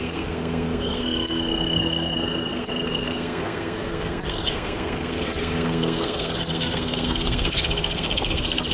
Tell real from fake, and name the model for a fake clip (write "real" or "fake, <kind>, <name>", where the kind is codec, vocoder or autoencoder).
fake, codec, SNAC